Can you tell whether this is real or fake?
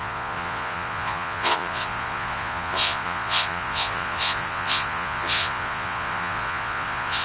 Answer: fake